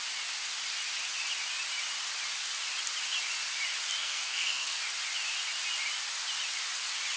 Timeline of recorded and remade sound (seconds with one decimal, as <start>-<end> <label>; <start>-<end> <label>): 0.0-4.0 recorded; 4.0-4.8 remade; 4.8-7.2 recorded